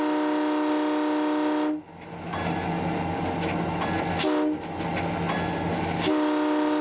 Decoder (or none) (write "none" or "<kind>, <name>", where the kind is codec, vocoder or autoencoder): none